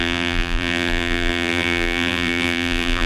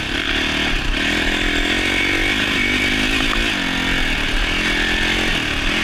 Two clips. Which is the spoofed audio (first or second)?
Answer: first